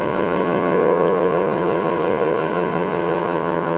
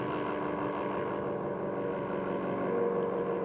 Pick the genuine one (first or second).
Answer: second